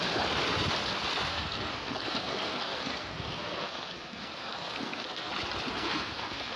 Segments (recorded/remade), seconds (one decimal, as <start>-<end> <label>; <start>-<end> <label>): 0.0-1.3 recorded; 1.3-5.3 remade; 5.3-5.7 recorded; 5.7-6.6 remade